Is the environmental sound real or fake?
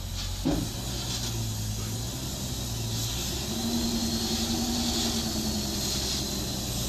real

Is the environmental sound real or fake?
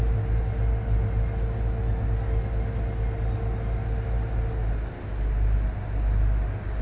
real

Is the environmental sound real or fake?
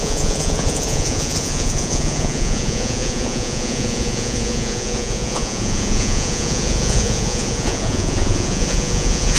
fake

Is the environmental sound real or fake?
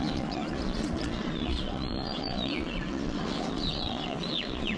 fake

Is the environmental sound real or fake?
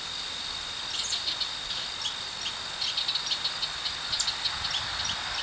real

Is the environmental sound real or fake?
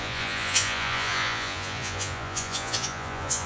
fake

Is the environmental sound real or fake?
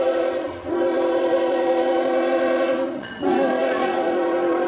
fake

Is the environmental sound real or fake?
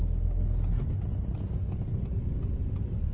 real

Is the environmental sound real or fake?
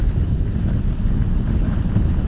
real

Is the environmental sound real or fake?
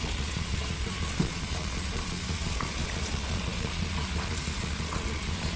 fake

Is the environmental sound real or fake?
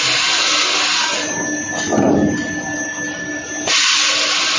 real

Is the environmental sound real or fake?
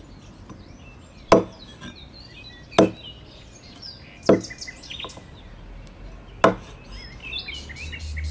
real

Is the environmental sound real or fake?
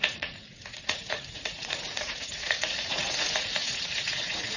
fake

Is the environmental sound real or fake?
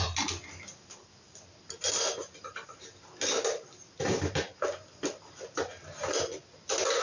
real